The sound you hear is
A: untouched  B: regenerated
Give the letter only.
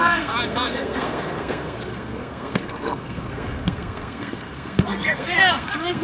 B